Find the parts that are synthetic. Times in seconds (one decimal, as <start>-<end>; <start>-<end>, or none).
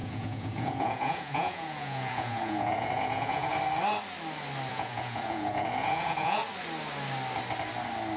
0.0-3.6; 4.7-6.4